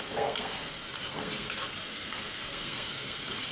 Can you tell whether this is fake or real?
fake